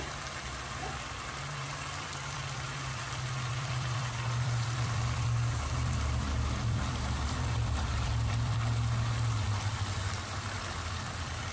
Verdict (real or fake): fake